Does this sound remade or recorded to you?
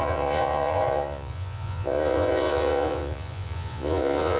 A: remade